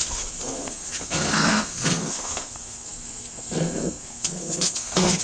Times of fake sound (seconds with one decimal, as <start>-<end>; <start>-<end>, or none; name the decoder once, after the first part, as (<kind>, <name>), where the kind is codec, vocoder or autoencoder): 0.0-5.2 (codec, SNAC)